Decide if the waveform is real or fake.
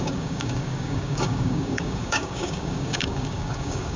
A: fake